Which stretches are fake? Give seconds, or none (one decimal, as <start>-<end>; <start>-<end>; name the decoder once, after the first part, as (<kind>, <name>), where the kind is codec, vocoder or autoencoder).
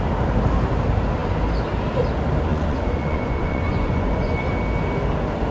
2.5-4.5 (vocoder, Vocos)